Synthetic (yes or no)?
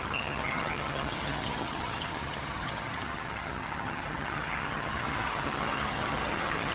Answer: yes